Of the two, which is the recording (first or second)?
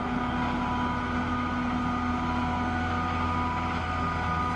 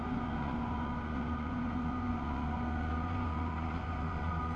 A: first